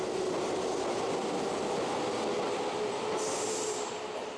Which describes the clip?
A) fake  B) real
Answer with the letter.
B